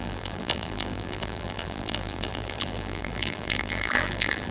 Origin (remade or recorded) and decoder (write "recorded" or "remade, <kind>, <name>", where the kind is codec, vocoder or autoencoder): remade, vocoder, BigVGAN v2